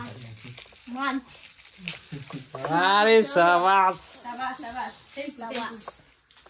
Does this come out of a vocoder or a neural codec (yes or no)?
no